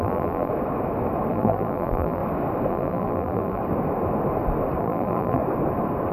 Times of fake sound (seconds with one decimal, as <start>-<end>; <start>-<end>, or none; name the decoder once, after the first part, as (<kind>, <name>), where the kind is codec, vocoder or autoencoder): 0.0-0.5 (vocoder, BigVGAN v2); 1.3-2.2; 2.7-3.6; 4.8-5.4